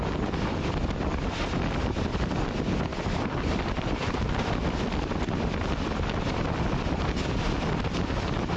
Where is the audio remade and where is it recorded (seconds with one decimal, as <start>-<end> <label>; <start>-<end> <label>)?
0.0-2.9 recorded; 2.9-6.2 remade; 6.2-8.6 recorded